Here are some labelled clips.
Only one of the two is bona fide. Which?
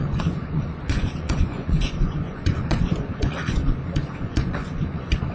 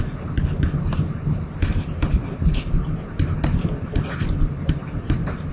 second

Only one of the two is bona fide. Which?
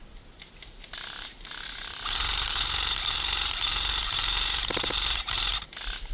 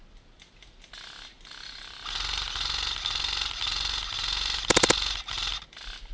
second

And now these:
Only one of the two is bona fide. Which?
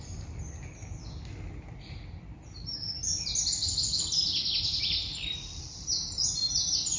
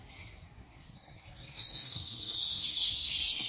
first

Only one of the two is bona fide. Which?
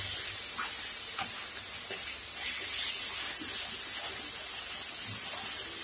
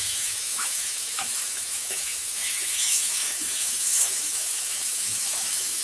first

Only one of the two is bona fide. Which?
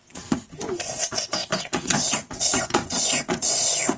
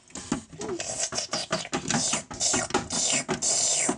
second